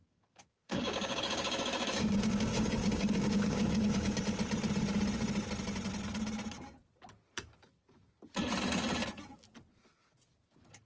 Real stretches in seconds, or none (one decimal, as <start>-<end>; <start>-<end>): 4.2-10.9